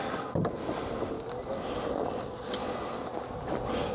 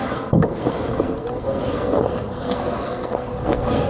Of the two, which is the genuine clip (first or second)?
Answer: first